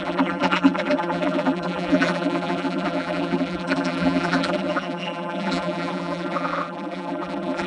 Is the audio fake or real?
fake